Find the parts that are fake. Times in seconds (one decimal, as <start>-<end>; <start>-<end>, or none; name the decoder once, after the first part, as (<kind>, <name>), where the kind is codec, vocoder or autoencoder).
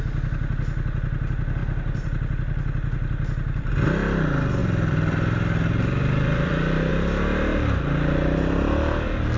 1.6-3.7 (vocoder, BigVGAN v2); 4.6-6.9